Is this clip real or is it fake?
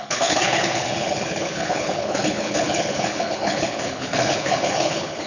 fake